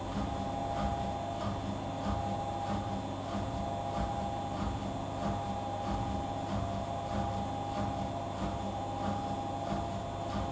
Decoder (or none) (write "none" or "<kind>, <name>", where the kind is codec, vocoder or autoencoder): none